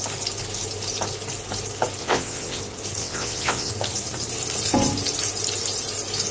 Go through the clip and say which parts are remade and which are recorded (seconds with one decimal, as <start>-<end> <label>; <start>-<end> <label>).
0.0-2.0 recorded; 2.0-2.6 remade; 2.6-3.0 recorded; 3.0-3.7 remade; 3.7-6.3 recorded